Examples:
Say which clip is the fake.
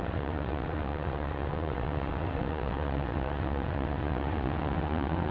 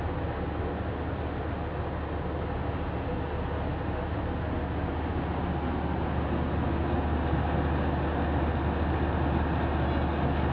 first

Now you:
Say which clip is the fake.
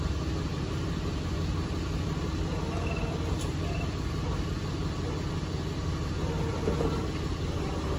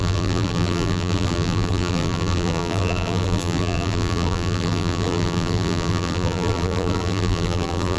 second